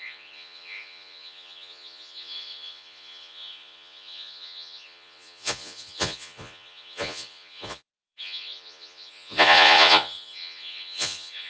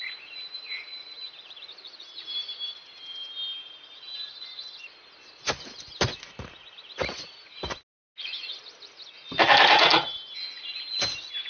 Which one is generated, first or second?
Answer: first